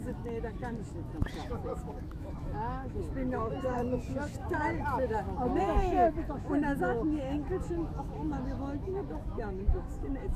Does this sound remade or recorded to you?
remade